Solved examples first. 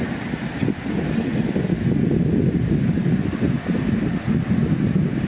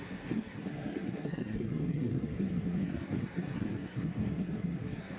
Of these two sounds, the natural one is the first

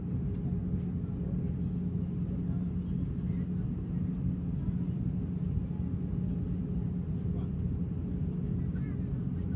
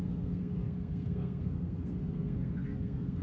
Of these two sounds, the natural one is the first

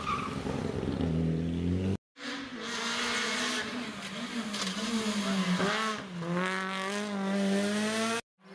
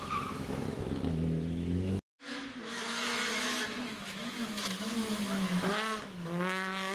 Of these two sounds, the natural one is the first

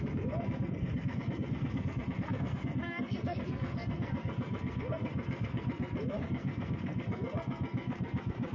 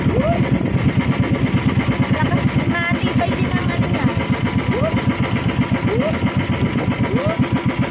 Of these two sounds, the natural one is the second